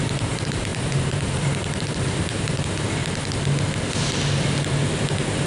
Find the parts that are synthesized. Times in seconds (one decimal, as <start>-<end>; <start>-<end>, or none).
0.0-3.0; 5.0-5.5